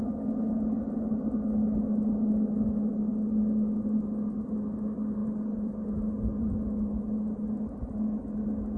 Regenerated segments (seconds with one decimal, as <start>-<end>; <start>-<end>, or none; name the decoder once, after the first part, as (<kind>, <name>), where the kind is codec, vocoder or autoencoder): 5.2-7.0 (vocoder, Vocos)